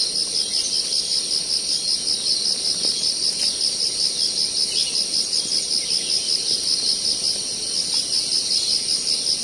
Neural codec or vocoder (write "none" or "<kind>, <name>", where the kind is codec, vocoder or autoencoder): none